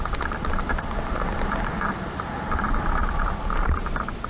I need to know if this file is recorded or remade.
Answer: recorded